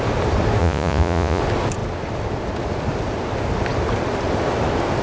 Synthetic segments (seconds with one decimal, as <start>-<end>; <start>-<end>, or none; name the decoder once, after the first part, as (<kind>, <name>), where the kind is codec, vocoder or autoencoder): 0.6-1.4 (vocoder, Vocos)